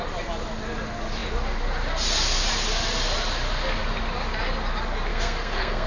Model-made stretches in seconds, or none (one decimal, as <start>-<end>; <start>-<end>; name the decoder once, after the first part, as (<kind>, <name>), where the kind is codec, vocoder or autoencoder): 5.1-5.9 (codec, SNAC)